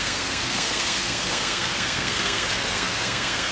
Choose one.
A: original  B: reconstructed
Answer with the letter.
B